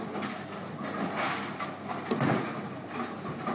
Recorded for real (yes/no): yes